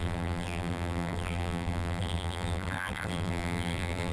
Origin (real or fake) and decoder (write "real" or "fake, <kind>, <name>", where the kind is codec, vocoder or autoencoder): fake, vocoder, BigVGAN v2